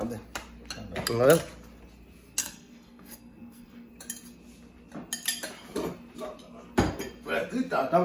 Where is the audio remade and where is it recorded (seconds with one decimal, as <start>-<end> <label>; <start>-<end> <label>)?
0.0-2.4 recorded; 2.4-3.9 remade; 3.9-8.0 recorded